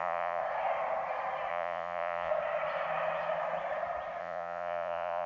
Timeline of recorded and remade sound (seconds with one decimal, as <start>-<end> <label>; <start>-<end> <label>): 0.0-0.4 remade; 0.4-1.5 recorded; 1.5-2.3 remade; 2.3-4.2 recorded; 4.2-5.3 remade